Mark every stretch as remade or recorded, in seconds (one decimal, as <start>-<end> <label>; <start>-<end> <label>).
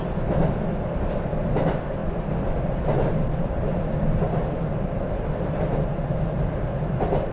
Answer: 0.0-7.3 recorded